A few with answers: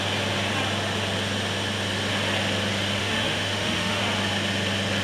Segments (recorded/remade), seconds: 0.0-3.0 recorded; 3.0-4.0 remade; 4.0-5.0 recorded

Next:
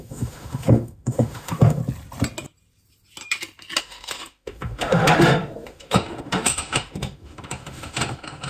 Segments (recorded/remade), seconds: 0.0-1.8 remade; 1.8-3.8 recorded; 3.8-8.5 remade

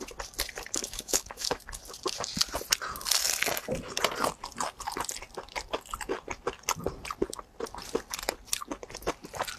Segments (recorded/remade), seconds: 0.0-0.8 recorded; 0.8-1.6 remade; 1.6-9.6 recorded

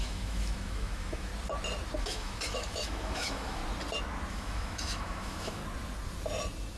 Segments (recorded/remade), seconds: 0.0-1.3 remade; 1.3-2.0 recorded; 2.0-3.6 remade; 3.6-4.3 recorded; 4.3-5.6 remade; 5.6-6.8 recorded

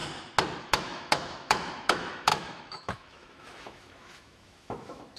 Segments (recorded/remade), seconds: 0.0-0.6 recorded; 0.6-5.2 remade

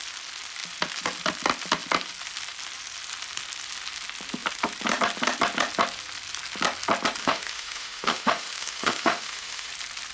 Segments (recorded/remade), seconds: 0.0-7.2 recorded; 7.2-9.7 remade; 9.7-10.1 recorded